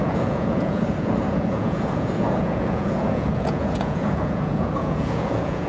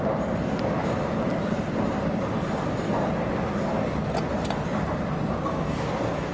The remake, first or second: first